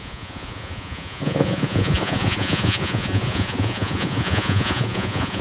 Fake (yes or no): yes